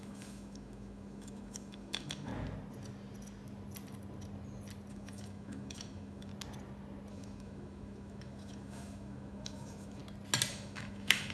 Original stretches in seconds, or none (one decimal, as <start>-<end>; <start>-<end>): 2.3-4.9; 6.3-7.1; 10.0-10.5